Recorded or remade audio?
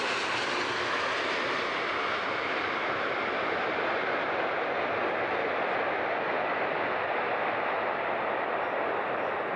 recorded